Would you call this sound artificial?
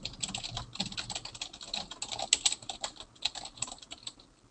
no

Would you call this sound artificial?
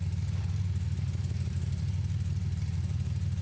yes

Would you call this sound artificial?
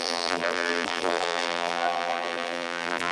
yes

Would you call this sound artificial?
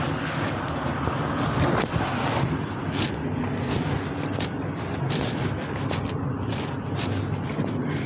no